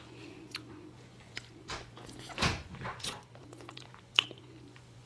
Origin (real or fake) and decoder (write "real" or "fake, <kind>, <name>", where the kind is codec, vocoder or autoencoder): fake, vocoder, Vocos